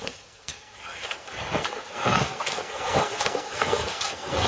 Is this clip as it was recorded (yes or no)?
no